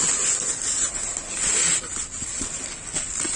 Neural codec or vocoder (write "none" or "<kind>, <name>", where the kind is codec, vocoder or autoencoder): none